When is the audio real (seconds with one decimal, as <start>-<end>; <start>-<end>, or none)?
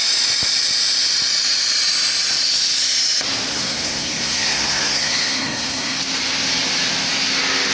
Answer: 0.0-3.5; 6.0-7.7